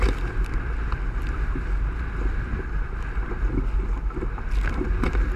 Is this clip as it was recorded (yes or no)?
yes